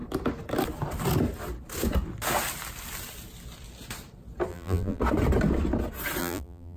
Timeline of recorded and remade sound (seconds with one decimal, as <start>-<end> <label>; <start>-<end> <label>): 0.0-4.5 recorded; 4.5-5.0 remade; 5.0-6.2 recorded; 6.2-6.8 remade